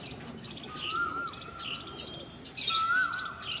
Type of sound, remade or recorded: recorded